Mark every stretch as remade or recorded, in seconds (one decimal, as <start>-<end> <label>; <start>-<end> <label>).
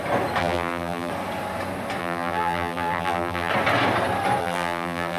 0.0-0.4 recorded; 0.4-1.1 remade; 1.1-2.0 recorded; 2.0-3.5 remade; 3.5-4.4 recorded; 4.4-5.2 remade